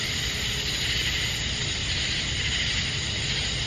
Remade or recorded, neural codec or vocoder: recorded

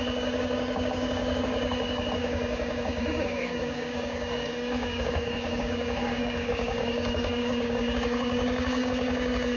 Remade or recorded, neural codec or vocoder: remade, codec, DAC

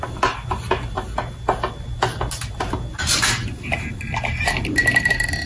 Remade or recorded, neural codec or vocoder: recorded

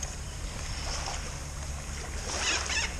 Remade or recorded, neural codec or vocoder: recorded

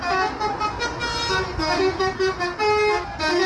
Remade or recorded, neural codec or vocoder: recorded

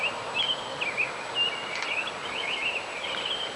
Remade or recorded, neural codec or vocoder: recorded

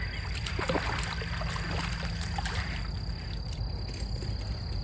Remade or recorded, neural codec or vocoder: recorded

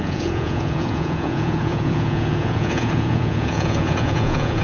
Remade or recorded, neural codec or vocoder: remade, vocoder, Vocos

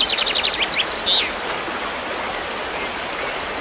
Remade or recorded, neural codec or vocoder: recorded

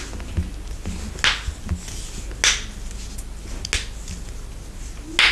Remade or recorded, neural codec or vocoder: recorded